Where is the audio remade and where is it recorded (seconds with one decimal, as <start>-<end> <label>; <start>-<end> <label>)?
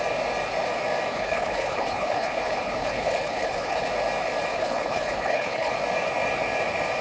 0.0-1.1 recorded; 1.1-3.9 remade; 3.9-4.5 recorded; 4.5-5.7 remade; 5.7-7.0 recorded